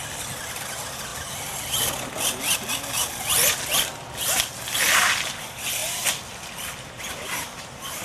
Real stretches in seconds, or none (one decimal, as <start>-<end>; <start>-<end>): 0.0-8.0